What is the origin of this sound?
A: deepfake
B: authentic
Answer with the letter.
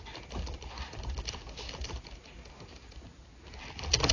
B